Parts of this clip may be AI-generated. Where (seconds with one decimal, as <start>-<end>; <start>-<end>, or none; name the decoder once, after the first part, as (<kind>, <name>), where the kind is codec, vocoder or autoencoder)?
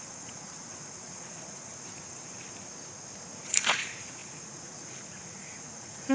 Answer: 0.0-1.7 (vocoder, Vocos); 3.4-6.1